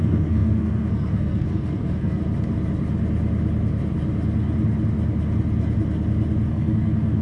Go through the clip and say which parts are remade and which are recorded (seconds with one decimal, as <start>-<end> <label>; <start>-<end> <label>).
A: 0.0-2.2 remade; 2.2-6.5 recorded; 6.5-7.2 remade